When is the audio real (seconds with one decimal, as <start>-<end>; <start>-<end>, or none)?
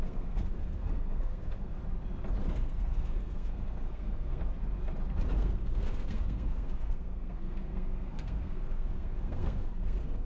1.8-2.5; 4.4-5.3